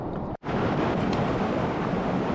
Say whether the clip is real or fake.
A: real